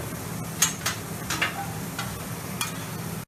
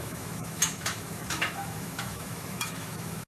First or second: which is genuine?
first